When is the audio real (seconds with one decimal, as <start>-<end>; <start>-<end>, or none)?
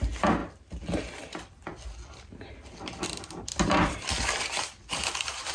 0.0-3.5; 4.4-5.5